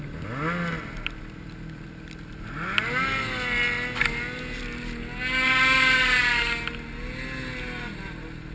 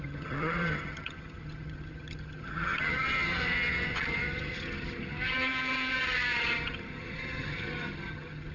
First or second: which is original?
first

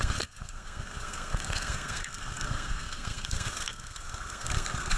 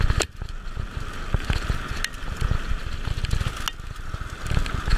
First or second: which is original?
second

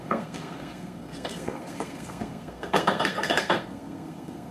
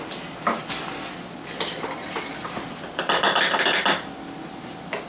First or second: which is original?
second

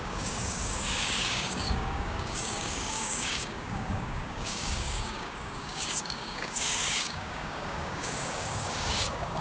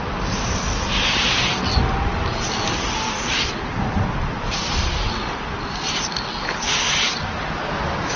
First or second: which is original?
second